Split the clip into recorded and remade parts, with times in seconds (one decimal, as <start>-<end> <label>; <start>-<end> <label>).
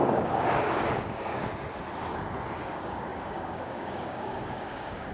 0.0-1.4 remade; 1.4-2.6 recorded; 2.6-5.1 remade